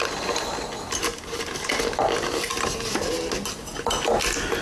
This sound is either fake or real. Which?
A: real